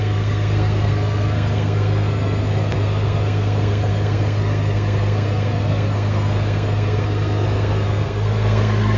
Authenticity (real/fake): fake